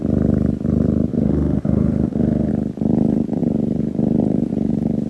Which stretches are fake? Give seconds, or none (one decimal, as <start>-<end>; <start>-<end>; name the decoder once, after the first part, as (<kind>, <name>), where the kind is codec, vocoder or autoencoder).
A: 1.1-2.5 (autoencoder, DAC-VAE)